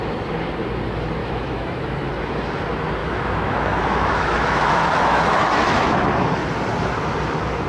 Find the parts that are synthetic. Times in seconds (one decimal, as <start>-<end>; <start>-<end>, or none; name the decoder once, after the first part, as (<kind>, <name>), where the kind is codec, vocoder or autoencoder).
1.2-2.1 (autoencoder, DAC-VAE); 3.0-6.0